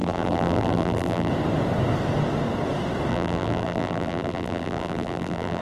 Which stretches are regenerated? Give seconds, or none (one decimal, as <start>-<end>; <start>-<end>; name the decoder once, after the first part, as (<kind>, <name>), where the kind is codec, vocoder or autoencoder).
0.0-1.3 (vocoder, BigVGAN v2); 3.1-5.6